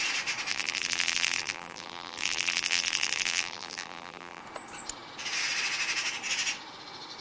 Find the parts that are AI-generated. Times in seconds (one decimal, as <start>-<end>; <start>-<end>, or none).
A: 0.5-4.4